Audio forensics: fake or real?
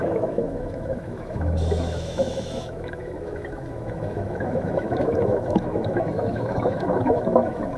fake